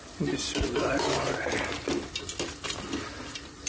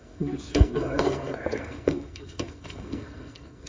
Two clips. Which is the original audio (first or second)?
first